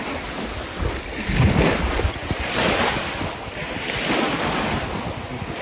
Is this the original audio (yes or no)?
yes